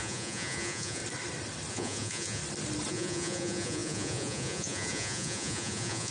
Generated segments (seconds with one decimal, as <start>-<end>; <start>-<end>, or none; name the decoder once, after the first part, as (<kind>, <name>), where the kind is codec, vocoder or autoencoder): 0.0-1.0 (vocoder, Vocos); 1.7-2.4; 2.9-6.1